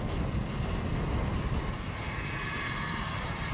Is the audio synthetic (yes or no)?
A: no